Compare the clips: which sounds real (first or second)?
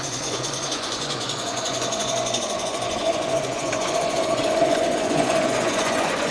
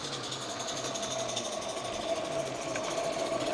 second